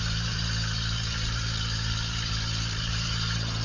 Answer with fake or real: fake